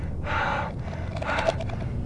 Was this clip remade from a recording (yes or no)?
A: no